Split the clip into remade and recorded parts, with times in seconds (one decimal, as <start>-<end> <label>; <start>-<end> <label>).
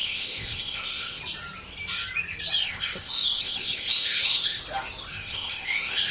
0.0-1.2 remade; 1.2-2.6 recorded; 2.6-4.6 remade; 4.6-5.1 recorded; 5.1-6.1 remade